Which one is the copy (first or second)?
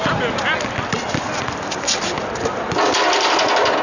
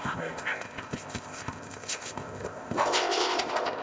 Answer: second